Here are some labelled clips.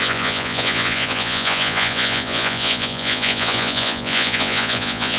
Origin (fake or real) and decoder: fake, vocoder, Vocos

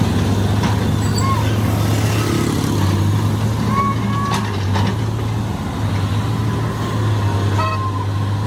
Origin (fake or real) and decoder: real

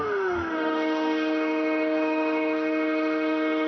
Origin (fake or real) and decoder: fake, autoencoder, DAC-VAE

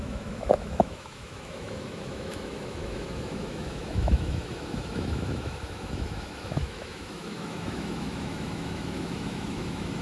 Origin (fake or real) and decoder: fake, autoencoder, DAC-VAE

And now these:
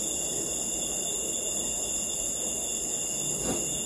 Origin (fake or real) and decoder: real